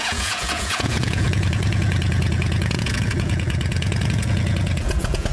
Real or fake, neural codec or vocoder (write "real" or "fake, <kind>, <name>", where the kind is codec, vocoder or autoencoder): fake, vocoder, Vocos